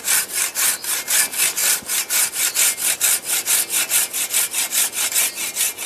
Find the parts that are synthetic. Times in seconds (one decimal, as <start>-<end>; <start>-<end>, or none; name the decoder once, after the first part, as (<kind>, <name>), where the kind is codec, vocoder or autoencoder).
none